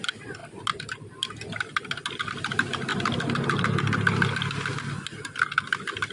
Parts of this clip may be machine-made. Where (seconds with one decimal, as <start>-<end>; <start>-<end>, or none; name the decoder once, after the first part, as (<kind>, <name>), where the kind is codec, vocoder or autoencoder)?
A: none